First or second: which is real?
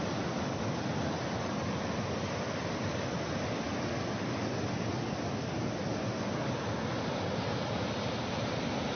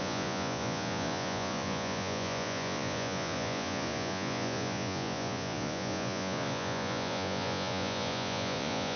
first